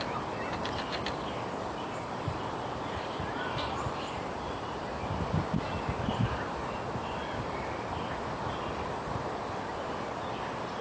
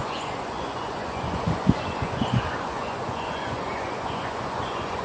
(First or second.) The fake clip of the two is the second